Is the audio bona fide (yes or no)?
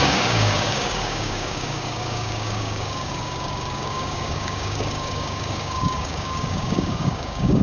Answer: no